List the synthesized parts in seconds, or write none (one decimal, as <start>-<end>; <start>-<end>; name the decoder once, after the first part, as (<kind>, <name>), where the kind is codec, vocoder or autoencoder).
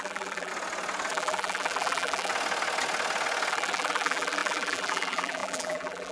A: 0.0-0.5 (vocoder, BigVGAN v2); 1.1-2.3; 3.5-6.1